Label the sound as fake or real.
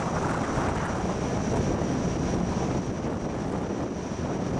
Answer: real